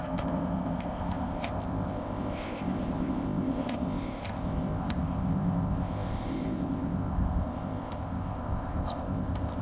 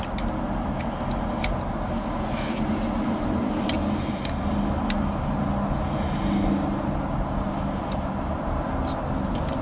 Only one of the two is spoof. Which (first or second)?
first